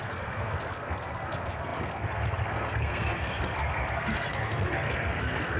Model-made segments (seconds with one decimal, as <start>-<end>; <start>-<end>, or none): 0.0-5.6